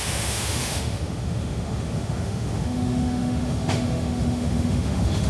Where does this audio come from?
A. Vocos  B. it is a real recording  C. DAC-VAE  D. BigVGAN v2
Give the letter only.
C